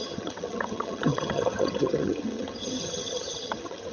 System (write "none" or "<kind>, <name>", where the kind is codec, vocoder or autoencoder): vocoder, HiFi-GAN